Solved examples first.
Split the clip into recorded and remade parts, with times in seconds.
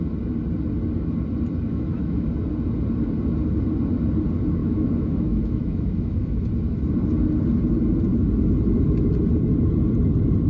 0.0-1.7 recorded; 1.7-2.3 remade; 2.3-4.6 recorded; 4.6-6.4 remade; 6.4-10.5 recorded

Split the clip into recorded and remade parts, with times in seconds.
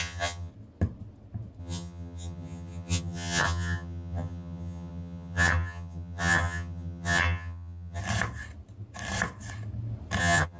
0.0-0.5 remade; 0.5-1.6 recorded; 1.6-8.0 remade; 8.0-10.2 recorded; 10.2-10.6 remade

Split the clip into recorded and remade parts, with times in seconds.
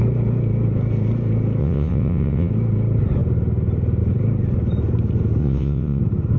0.0-1.6 recorded; 1.6-2.5 remade; 2.5-5.4 recorded; 5.4-6.0 remade; 6.0-6.4 recorded